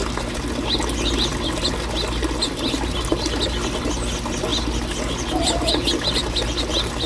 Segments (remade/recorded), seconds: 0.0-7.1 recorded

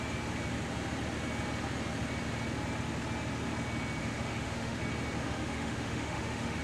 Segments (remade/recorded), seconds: 0.0-4.0 recorded; 4.0-4.8 remade; 4.8-5.2 recorded; 5.2-6.6 remade

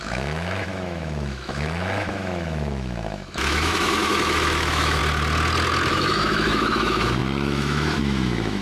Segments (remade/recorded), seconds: 0.0-5.0 remade; 5.0-5.9 recorded; 5.9-8.6 remade

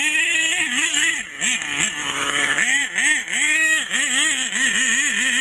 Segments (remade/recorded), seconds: 0.0-2.0 recorded; 2.0-2.8 remade; 2.8-3.2 recorded; 3.2-3.9 remade; 3.9-5.4 recorded

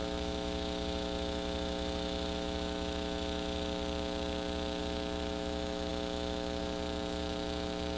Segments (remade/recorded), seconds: 0.0-8.0 remade

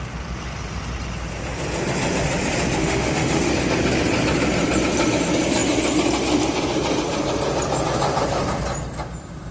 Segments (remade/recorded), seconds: 0.0-2.8 recorded; 2.8-3.5 remade; 3.5-9.5 recorded

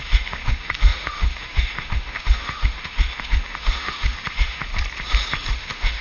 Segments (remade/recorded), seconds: 0.0-4.6 remade; 4.6-5.5 recorded; 5.5-6.0 remade